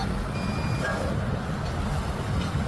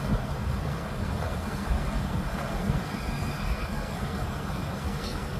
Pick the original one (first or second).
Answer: first